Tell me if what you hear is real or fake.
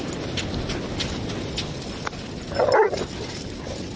real